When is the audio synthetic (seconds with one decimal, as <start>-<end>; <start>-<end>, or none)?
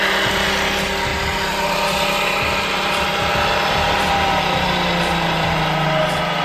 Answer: none